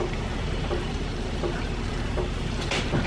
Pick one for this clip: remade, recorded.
remade